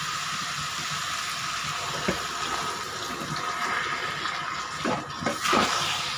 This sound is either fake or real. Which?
real